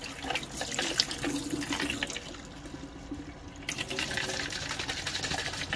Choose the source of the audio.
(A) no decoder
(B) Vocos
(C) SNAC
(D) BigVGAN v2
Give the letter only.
A